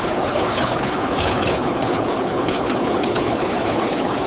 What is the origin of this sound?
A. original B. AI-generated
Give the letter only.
B